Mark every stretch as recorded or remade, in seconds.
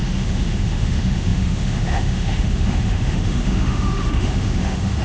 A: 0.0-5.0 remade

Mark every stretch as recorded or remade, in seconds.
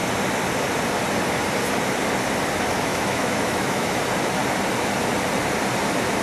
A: 0.0-2.9 recorded; 2.9-4.0 remade; 4.0-6.2 recorded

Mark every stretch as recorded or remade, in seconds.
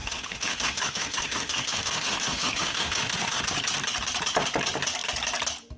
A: 0.0-3.4 remade; 3.4-5.8 recorded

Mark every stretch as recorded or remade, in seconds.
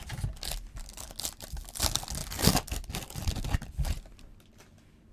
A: 0.0-5.1 recorded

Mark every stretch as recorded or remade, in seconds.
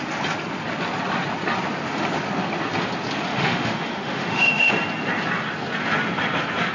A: 0.0-3.3 recorded; 3.3-4.7 remade; 4.7-6.7 recorded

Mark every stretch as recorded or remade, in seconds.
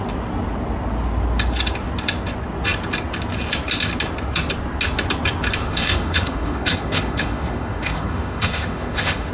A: 0.0-5.6 recorded; 5.6-9.3 remade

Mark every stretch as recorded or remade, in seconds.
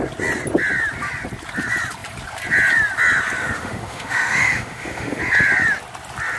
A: 0.0-3.4 recorded; 3.4-5.2 remade; 5.2-6.4 recorded